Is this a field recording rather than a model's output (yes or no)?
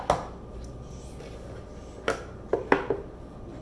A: yes